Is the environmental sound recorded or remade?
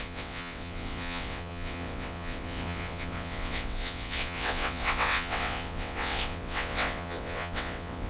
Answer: remade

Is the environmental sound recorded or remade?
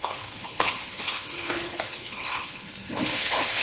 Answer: remade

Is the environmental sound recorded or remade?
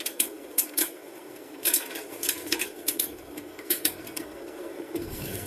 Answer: remade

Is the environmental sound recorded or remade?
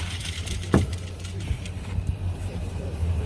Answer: remade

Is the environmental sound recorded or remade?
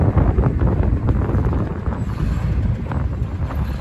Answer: recorded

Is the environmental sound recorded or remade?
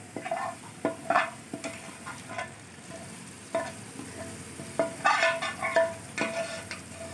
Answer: recorded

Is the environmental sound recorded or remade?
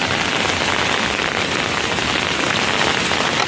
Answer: recorded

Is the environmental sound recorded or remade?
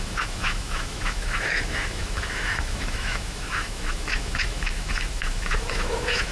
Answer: remade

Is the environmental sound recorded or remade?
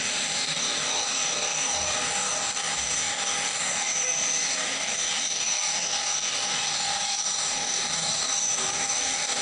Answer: remade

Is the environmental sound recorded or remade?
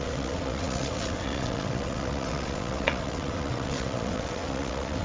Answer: remade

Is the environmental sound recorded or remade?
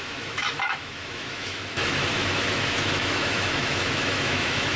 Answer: remade